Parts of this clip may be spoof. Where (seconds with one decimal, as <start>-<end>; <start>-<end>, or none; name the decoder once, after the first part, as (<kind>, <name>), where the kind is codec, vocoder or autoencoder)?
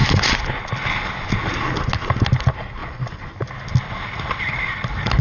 2.8-3.3 (vocoder, Vocos)